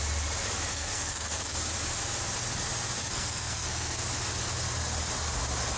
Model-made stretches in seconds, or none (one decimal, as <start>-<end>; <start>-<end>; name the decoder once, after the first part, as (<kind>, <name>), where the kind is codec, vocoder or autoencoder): 0.7-1.7 (codec, SNAC); 3.0-4.0